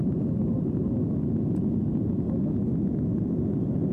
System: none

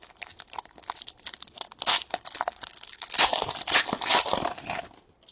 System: none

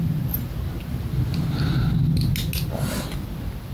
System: none